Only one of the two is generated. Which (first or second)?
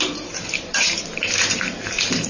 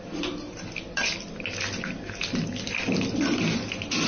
first